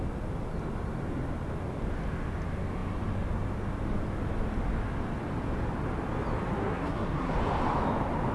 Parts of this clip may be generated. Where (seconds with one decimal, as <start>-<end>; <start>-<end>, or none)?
6.6-7.3